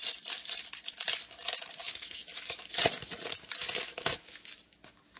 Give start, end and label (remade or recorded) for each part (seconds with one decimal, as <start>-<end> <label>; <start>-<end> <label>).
0.0-1.8 recorded; 1.8-2.8 remade; 2.8-3.6 recorded; 3.6-5.2 remade